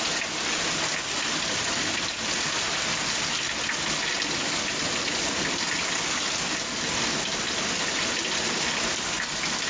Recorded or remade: recorded